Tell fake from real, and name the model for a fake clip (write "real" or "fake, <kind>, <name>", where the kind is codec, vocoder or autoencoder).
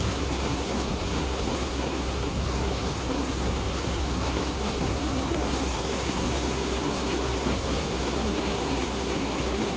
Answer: fake, codec, SNAC